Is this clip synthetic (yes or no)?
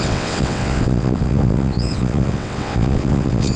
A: yes